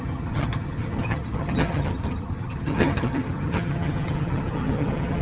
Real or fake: fake